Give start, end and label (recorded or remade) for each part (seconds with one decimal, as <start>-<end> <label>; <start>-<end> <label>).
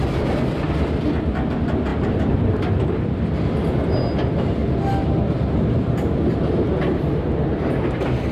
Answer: 0.0-8.3 recorded